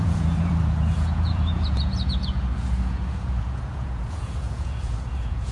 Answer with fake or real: fake